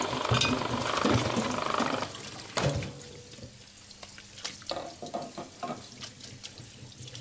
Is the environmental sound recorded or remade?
recorded